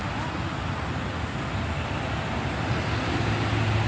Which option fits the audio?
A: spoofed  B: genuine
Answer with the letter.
B